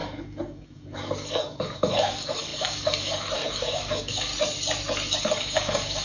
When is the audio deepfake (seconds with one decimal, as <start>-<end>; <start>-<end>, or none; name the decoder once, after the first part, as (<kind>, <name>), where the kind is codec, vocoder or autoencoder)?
0.0-4.3 (codec, DAC); 5.2-6.0